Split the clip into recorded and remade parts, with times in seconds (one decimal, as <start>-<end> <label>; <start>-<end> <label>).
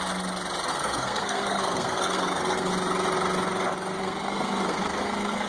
0.0-0.7 recorded; 0.7-2.7 remade; 2.7-4.0 recorded; 4.0-5.5 remade